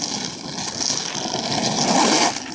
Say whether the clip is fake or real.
real